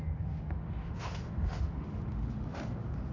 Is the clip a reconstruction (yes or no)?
yes